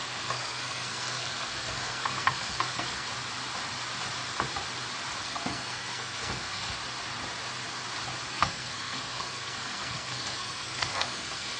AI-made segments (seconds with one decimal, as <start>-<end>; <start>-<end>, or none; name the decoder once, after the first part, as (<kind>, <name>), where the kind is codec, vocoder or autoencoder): 0.0-3.1 (codec, SNAC); 5.2-6.8; 8.3-11.6